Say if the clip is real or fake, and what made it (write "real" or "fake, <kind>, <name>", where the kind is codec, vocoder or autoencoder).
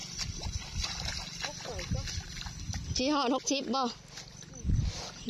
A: real